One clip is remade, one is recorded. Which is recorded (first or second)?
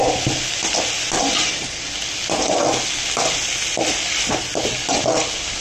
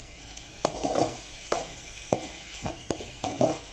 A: first